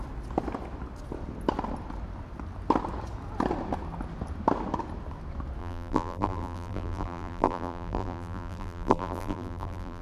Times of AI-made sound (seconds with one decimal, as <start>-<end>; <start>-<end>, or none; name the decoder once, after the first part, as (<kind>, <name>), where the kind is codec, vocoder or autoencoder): 5.6-10.0 (vocoder, BigVGAN v2)